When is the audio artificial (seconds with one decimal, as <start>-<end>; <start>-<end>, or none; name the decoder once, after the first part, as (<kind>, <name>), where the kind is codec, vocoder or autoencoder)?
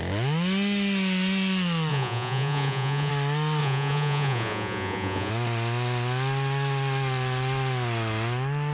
1.9-3.1 (vocoder, Vocos); 3.6-5.3